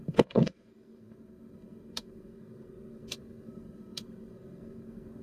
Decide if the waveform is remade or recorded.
remade